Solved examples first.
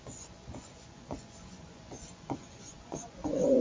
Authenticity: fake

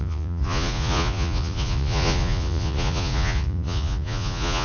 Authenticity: fake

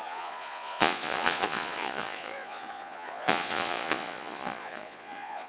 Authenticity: fake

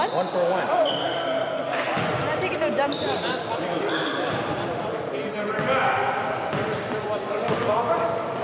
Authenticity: real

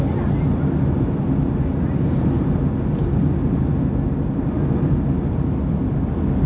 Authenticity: real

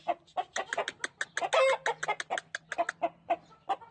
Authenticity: real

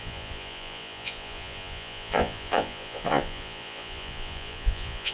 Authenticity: fake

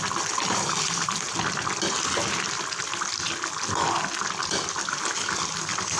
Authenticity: real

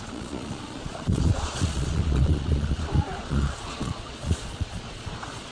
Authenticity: fake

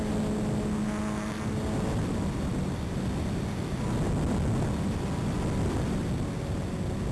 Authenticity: real